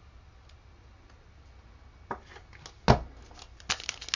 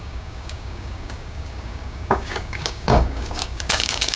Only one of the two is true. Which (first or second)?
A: first